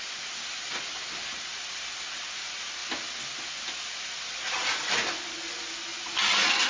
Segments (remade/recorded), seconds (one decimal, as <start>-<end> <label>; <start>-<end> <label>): 0.0-6.7 recorded